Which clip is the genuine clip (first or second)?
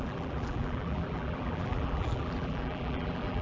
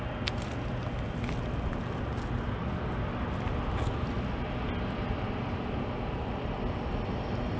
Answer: second